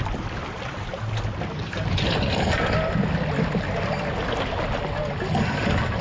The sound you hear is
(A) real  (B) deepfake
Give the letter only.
A